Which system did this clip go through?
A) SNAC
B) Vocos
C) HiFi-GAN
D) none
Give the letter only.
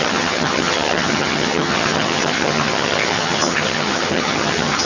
C